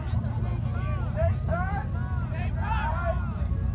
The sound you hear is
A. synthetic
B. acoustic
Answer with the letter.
B